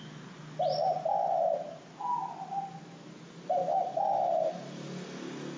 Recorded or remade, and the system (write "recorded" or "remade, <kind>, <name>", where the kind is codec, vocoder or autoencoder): recorded